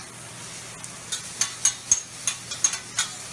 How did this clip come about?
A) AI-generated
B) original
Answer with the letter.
B